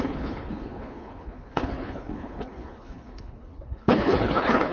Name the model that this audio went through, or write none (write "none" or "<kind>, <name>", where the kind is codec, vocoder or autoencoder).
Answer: codec, HILCodec